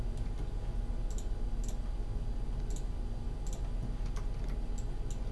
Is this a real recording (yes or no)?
yes